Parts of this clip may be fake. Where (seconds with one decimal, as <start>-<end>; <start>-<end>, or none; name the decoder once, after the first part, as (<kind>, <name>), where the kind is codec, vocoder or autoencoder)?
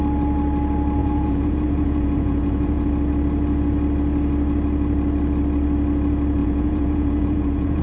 1.0-2.9 (vocoder, Vocos); 6.4-7.8